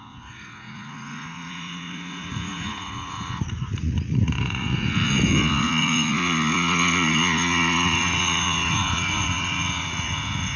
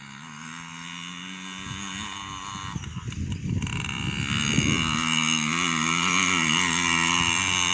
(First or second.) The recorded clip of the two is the second